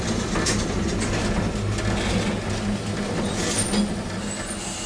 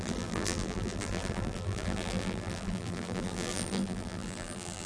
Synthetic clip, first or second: second